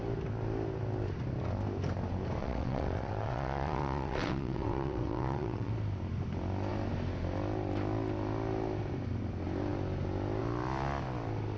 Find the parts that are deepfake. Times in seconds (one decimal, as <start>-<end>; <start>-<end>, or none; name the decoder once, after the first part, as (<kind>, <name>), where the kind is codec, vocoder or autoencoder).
2.4-5.7 (vocoder, WaveNeXt)